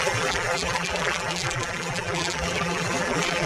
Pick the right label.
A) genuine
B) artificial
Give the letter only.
B